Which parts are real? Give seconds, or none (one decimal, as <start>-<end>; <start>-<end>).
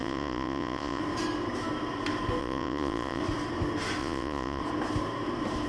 1.0-2.4; 3.2-4.0; 4.6-5.7